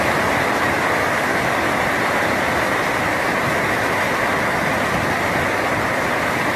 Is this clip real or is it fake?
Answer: real